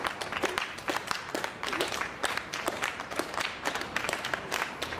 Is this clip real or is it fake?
fake